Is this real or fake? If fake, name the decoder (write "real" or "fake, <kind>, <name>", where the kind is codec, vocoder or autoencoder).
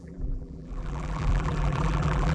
fake, vocoder, BigVGAN v2